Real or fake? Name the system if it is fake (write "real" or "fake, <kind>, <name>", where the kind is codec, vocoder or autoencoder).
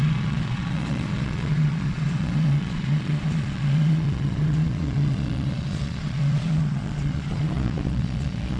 fake, vocoder, Vocos